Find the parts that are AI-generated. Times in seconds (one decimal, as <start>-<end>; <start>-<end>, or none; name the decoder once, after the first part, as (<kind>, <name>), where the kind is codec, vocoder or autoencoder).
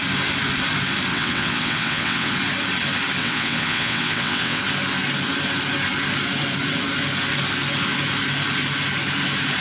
1.1-2.3 (vocoder, WaveNeXt); 3.2-4.6